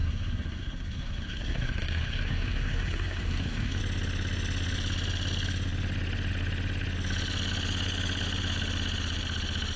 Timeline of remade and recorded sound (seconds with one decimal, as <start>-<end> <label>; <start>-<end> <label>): 0.0-3.8 remade; 3.8-9.8 recorded